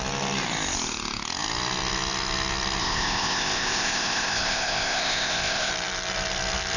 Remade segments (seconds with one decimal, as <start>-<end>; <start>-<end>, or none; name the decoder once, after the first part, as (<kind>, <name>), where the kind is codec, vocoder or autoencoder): 2.8-5.7 (codec, ZipCodec)